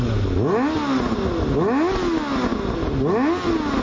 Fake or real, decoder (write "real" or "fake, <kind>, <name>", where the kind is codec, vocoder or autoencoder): real